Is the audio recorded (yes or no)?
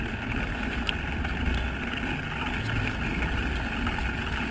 yes